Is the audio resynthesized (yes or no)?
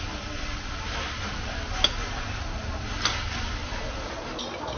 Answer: no